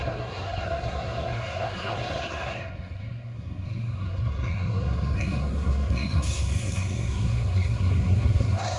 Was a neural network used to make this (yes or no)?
yes